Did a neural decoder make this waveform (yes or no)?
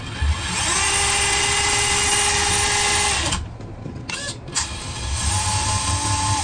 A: no